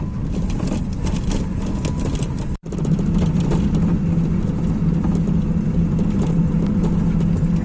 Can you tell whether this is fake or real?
real